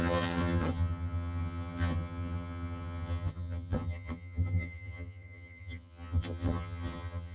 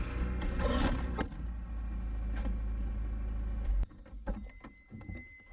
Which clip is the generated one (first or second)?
first